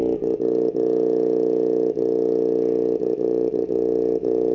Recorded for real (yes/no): no